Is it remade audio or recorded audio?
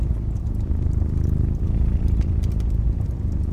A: recorded